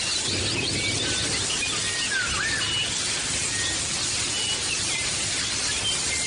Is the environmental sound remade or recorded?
recorded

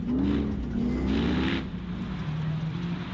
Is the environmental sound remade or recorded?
recorded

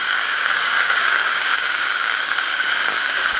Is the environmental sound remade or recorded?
remade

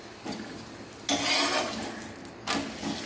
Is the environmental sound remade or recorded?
recorded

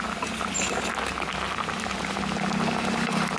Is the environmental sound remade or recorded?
recorded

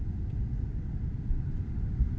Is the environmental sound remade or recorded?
recorded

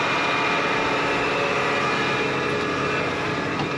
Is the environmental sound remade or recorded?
recorded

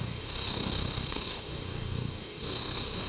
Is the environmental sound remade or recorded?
remade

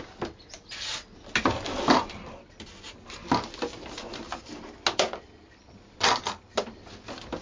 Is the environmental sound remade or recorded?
recorded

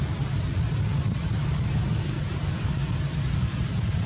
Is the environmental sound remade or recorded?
recorded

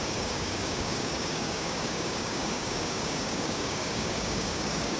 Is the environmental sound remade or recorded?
remade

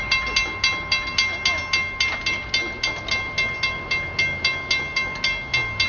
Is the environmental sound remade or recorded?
recorded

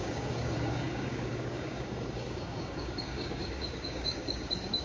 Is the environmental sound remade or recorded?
remade